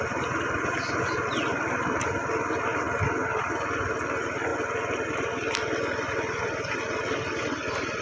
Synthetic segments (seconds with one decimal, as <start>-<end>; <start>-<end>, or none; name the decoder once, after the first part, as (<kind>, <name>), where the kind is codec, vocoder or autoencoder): none